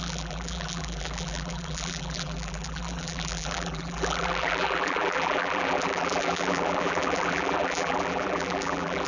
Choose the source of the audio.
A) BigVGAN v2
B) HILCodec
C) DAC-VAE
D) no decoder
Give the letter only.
A